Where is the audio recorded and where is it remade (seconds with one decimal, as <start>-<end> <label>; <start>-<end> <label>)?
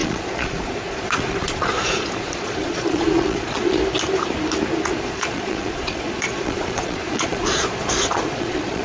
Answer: 0.0-3.8 remade; 3.8-5.0 recorded; 5.0-8.8 remade